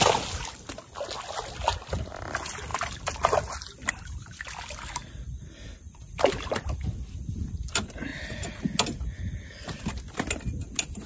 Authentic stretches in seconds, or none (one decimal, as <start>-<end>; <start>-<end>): 0.0-11.1